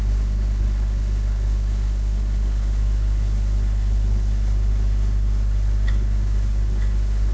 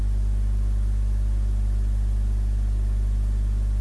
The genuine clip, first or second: second